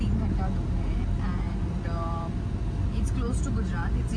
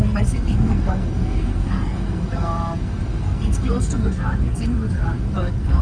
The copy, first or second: second